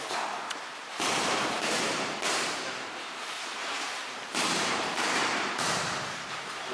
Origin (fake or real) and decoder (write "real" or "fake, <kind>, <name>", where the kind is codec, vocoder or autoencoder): fake, vocoder, BigVGAN v2